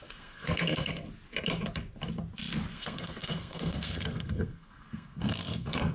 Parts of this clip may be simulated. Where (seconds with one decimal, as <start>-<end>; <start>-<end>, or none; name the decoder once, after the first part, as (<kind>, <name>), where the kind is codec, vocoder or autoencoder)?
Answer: 0.0-1.1 (codec, SNAC); 2.7-5.9